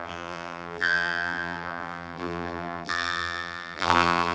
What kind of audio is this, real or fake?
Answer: fake